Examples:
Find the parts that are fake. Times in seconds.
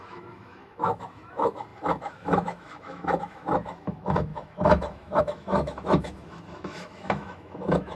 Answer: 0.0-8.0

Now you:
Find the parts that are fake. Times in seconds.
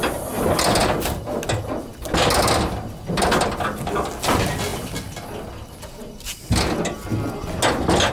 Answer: none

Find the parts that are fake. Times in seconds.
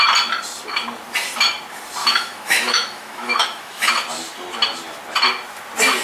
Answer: 2.0-3.9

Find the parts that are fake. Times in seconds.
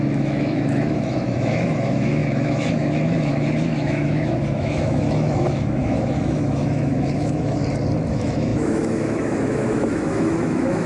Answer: 0.0-7.6; 8.1-10.9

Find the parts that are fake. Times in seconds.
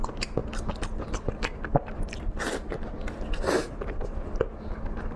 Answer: none